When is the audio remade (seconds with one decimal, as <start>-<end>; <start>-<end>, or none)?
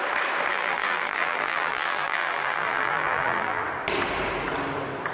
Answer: 0.5-3.6